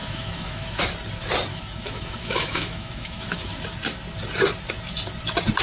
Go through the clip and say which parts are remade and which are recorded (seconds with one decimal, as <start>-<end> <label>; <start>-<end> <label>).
0.0-0.8 remade; 0.8-1.5 recorded; 1.5-3.6 remade; 3.6-5.6 recorded